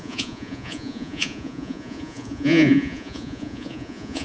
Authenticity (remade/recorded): remade